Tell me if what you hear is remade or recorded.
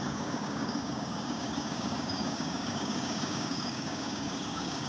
remade